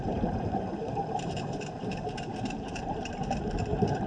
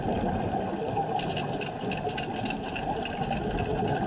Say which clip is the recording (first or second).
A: second